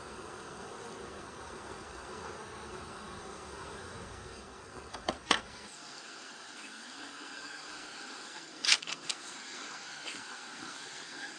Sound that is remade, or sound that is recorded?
remade